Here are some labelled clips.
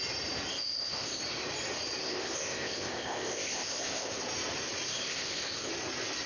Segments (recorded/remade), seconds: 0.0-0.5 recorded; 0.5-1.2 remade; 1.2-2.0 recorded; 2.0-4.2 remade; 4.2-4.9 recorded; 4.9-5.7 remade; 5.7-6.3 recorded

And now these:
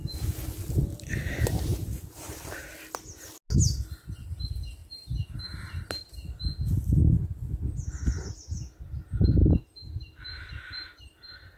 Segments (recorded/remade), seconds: 0.0-1.7 recorded; 1.7-2.7 remade; 2.7-9.4 recorded; 9.4-11.2 remade; 11.2-11.6 recorded

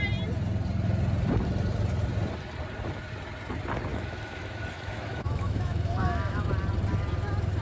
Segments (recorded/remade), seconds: 0.0-3.9 recorded; 3.9-6.5 remade; 6.5-7.6 recorded

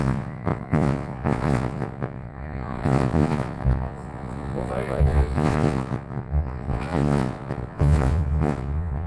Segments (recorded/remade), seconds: 0.0-9.1 remade